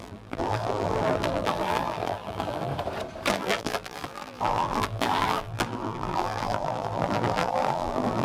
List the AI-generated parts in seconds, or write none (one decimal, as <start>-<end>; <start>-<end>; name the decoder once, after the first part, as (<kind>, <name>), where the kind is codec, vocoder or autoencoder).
0.0-2.7 (vocoder, BigVGAN v2); 3.3-8.2

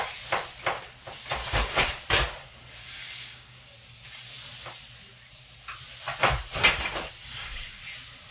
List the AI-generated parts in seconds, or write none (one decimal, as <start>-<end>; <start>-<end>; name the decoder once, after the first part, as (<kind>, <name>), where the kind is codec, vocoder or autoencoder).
1.4-1.9 (codec, DAC); 2.8-3.7; 7.2-7.8

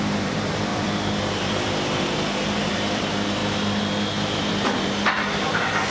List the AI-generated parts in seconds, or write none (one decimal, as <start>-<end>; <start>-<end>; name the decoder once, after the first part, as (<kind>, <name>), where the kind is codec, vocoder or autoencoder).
0.0-3.4 (vocoder, BigVGAN v2); 4.3-5.9

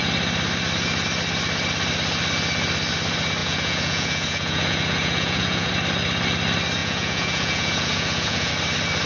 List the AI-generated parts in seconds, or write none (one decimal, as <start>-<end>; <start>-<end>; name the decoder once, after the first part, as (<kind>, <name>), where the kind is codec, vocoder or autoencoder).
3.4-5.7 (vocoder, Vocos); 6.8-8.5

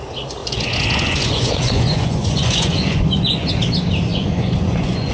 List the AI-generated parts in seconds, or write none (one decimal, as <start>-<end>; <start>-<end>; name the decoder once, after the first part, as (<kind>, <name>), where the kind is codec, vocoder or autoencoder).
0.4-3.5 (vocoder, Vocos); 4.1-5.1

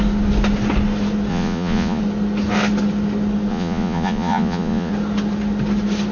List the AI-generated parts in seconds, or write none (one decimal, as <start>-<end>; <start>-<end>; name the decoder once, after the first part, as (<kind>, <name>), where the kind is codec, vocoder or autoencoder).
1.3-2.0 (vocoder, Vocos); 3.5-4.9

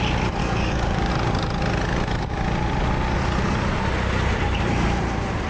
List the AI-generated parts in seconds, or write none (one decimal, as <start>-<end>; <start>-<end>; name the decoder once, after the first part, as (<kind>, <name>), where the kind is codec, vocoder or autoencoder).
0.4-1.1 (codec, DAC)

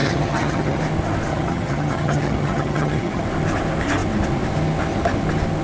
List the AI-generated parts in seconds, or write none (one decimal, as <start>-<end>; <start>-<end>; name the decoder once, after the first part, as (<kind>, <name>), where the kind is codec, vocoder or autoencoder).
0.0-0.8 (vocoder, HiFi-GAN); 1.3-3.2